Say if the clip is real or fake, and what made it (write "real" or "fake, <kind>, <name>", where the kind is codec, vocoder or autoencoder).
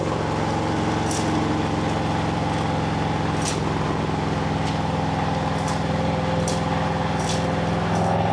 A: real